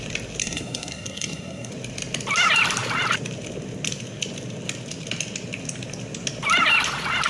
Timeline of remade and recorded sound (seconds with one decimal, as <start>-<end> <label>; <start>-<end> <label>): 0.0-0.4 recorded; 0.4-1.7 remade; 1.7-7.3 recorded